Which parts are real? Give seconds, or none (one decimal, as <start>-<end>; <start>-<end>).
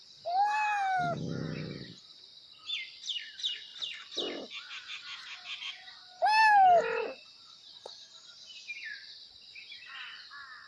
0.0-10.7